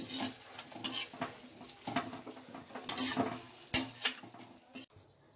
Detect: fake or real real